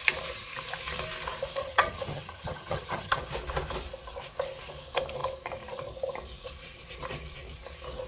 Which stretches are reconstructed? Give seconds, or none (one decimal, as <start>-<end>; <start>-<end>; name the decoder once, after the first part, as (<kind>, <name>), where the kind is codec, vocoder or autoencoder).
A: 1.6-3.2 (vocoder, HiFi-GAN)